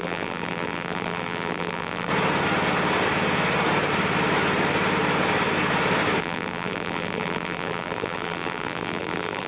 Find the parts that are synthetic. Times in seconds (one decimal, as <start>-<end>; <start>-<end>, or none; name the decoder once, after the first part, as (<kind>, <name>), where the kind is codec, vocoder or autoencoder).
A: 0.0-2.1 (vocoder, BigVGAN v2); 6.2-9.5